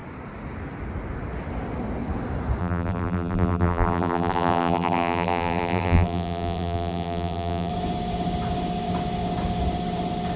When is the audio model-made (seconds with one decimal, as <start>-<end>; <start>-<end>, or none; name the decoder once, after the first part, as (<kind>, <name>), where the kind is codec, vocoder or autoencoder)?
2.6-7.7 (vocoder, BigVGAN v2)